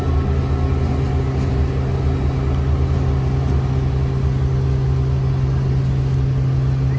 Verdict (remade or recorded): recorded